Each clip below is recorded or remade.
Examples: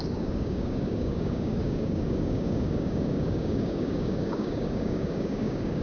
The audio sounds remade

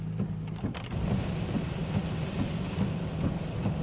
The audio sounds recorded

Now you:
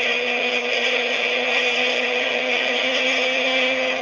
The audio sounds remade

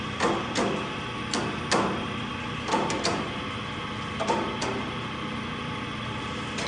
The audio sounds recorded